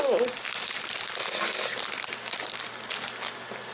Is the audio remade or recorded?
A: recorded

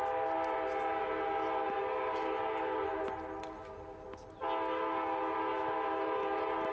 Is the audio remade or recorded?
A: recorded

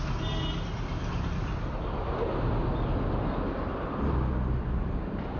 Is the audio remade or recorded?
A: recorded